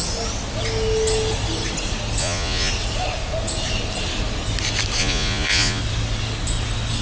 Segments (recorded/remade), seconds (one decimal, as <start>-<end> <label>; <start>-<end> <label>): 0.0-2.2 recorded; 2.2-2.7 remade; 2.7-5.0 recorded; 5.0-5.8 remade; 5.8-7.0 recorded